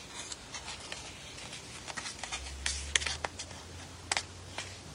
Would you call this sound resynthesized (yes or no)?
no